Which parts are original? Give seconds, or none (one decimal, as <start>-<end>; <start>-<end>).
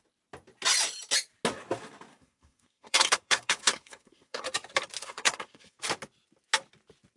0.0-2.1; 4.4-5.0; 5.8-7.2